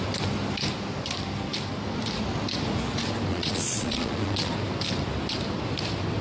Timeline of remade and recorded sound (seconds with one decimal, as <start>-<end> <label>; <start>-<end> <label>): 0.0-3.3 recorded; 3.3-4.5 remade; 4.5-6.2 recorded